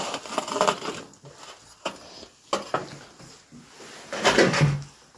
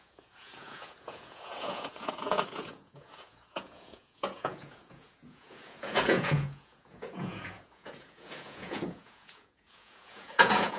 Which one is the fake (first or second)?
second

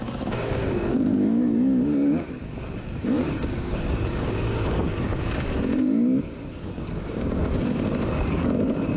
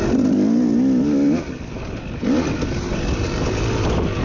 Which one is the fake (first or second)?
first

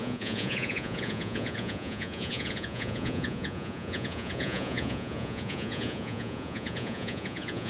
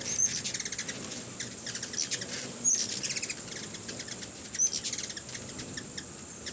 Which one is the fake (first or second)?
first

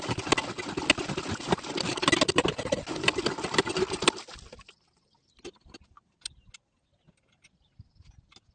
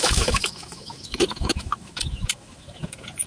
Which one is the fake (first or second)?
second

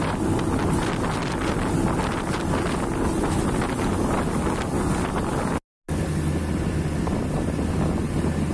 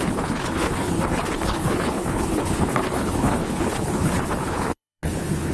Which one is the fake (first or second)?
second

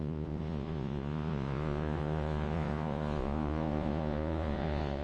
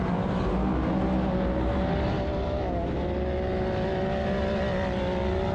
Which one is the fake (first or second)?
first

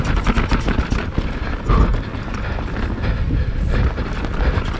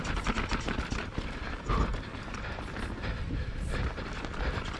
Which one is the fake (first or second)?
second